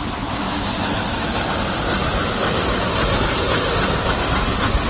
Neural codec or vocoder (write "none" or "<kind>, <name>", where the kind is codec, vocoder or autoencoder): none